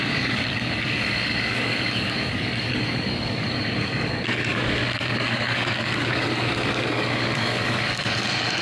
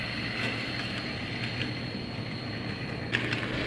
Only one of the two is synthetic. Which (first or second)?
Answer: first